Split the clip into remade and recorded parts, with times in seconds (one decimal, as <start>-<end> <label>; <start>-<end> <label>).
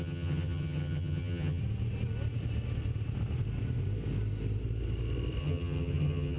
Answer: 0.0-1.6 remade; 1.6-5.4 recorded; 5.4-6.4 remade